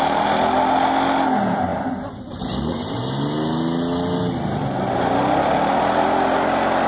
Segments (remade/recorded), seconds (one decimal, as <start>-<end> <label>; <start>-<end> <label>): 0.0-6.9 recorded